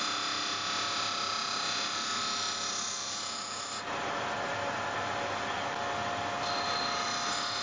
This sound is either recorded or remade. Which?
recorded